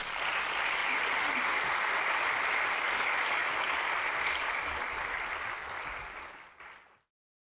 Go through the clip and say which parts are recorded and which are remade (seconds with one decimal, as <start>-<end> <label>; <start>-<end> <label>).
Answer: 0.0-7.6 recorded